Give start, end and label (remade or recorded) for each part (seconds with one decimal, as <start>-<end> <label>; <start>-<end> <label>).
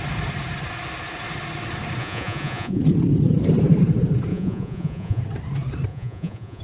0.0-2.0 recorded; 2.0-2.8 remade; 2.8-4.3 recorded; 4.3-5.2 remade; 5.2-5.9 recorded; 5.9-6.6 remade